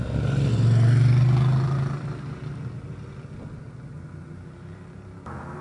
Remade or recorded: recorded